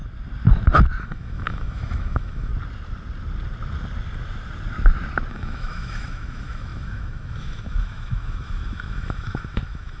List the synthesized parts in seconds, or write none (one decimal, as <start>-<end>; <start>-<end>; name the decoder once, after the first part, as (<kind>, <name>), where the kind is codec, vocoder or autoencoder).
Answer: 1.0-2.5 (autoencoder, DAC-VAE); 5.3-10.0